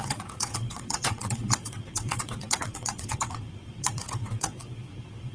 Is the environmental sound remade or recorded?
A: remade